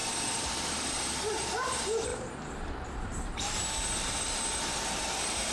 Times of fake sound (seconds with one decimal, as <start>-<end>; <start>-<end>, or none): 0.0-5.5